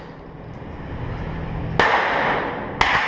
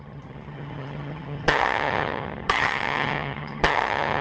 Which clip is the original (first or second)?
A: first